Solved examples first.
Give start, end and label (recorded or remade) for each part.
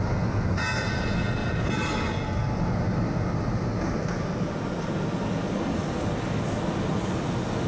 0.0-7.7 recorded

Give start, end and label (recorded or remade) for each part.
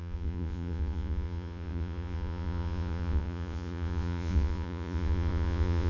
0.0-5.9 remade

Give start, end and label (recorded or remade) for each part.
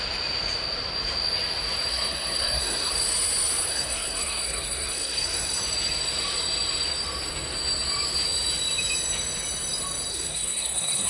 0.0-1.9 recorded; 1.9-2.9 remade; 2.9-3.7 recorded; 3.7-5.6 remade; 5.6-10.1 recorded; 10.1-11.1 remade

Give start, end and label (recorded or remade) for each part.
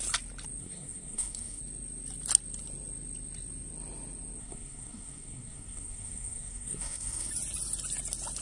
0.0-0.6 recorded; 0.6-1.6 remade; 1.6-4.4 recorded; 4.4-7.3 remade; 7.3-8.4 recorded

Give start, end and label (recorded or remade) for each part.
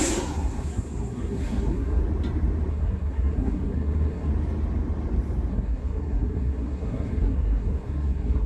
0.0-2.0 remade; 2.0-2.7 recorded; 2.7-4.3 remade; 4.3-5.5 recorded; 5.5-8.5 remade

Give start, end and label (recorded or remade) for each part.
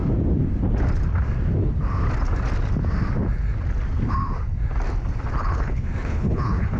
0.0-5.4 recorded; 5.4-6.8 remade